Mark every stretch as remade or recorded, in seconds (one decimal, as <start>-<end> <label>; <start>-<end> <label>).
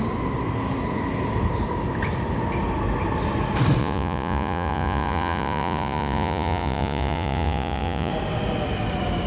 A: 0.0-3.8 recorded; 3.8-8.1 remade; 8.1-9.3 recorded